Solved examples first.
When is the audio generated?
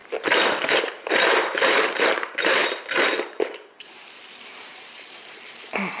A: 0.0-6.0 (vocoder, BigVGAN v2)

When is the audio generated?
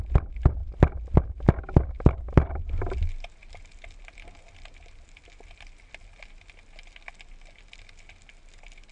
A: none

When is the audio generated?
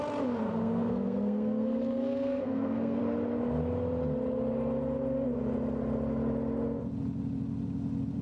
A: 0.4-3.0 (codec, SNAC)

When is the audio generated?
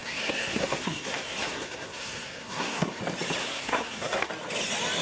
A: 0.0-3.0 (codec, SNAC); 3.4-4.3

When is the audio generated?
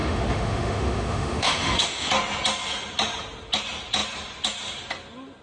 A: 0.0-2.1 (autoencoder, DAC-VAE)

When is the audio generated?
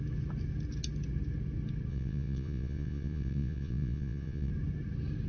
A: 1.9-4.5 (vocoder, Vocos)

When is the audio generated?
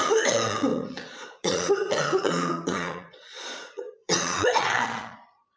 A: 0.0-5.6 (vocoder, Vocos)